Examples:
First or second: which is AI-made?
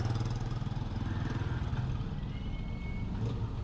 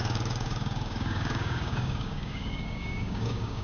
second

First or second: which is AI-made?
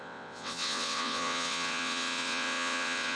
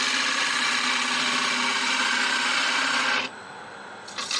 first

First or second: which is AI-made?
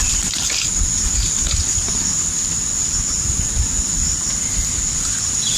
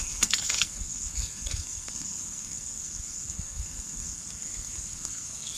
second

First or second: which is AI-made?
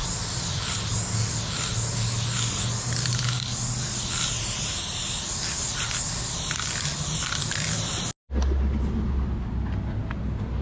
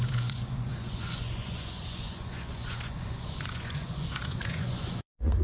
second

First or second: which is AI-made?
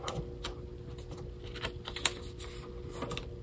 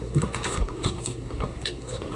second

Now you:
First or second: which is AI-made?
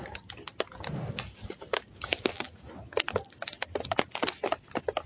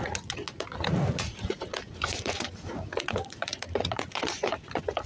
second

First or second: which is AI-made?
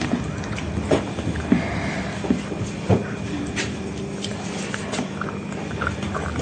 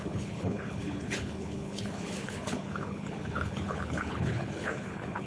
second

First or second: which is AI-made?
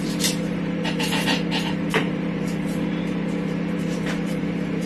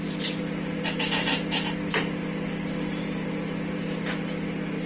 first